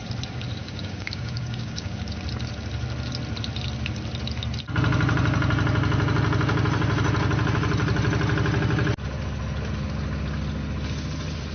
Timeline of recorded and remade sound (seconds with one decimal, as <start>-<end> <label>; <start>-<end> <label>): 0.0-0.6 recorded; 0.6-2.0 remade; 2.0-11.5 recorded